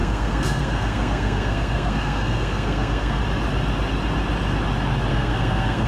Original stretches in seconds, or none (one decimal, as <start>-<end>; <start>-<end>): 3.2-5.1